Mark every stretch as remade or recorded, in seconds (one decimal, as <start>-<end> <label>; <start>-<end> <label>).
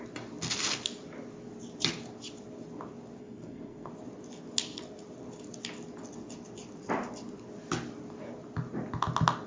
0.0-3.2 recorded; 3.2-3.9 remade; 3.9-9.5 recorded